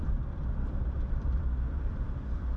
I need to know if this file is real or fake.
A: fake